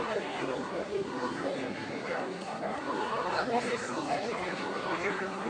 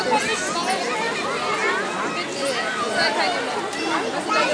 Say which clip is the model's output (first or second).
first